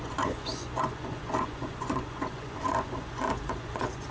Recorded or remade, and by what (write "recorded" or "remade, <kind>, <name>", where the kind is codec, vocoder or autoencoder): remade, vocoder, Vocos